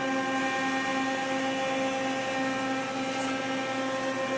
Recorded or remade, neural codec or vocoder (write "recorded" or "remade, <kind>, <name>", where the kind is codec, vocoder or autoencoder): recorded